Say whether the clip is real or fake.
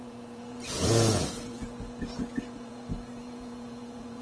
fake